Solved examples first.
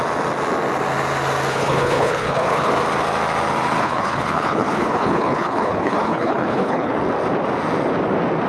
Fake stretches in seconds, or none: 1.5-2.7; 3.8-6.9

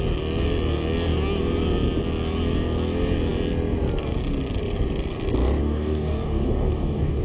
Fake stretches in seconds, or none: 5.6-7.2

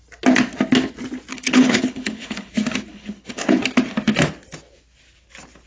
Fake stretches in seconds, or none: 1.3-2.5; 2.9-3.6